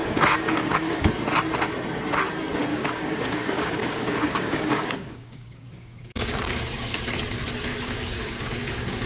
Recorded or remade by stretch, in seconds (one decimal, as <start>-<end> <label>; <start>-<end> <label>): 0.0-1.1 remade; 1.1-2.7 recorded; 2.7-7.0 remade; 7.0-7.7 recorded; 7.7-9.1 remade

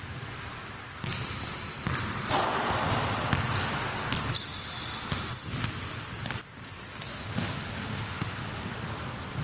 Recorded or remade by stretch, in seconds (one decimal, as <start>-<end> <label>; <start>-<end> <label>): 0.0-7.1 recorded; 7.1-8.7 remade; 8.7-9.4 recorded